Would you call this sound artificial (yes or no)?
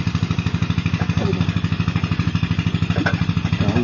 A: no